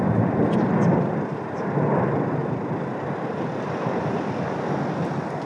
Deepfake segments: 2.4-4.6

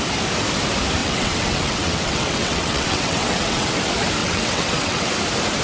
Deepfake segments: 1.0-3.7; 4.2-5.1